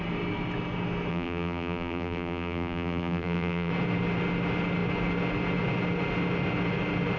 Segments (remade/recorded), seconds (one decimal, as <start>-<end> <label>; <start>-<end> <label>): 0.0-1.1 recorded; 1.1-3.7 remade; 3.7-7.2 recorded